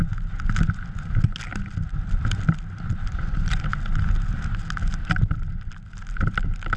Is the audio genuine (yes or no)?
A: yes